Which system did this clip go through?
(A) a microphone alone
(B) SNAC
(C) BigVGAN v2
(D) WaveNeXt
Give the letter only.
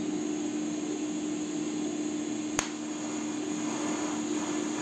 A